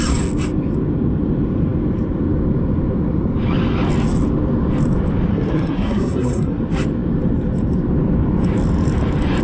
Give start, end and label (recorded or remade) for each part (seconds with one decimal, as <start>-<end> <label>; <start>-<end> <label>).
0.0-5.3 recorded; 5.3-6.6 remade; 6.6-9.4 recorded